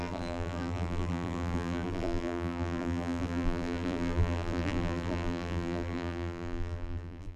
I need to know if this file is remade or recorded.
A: remade